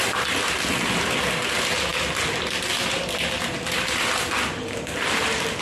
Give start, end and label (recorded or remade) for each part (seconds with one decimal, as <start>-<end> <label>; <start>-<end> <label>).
0.0-1.9 recorded; 1.9-5.6 remade